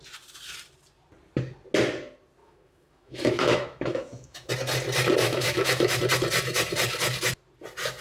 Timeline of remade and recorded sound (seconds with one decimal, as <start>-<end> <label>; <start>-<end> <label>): 0.0-2.4 recorded; 2.4-4.5 remade; 4.5-5.2 recorded; 5.2-6.0 remade; 6.0-8.0 recorded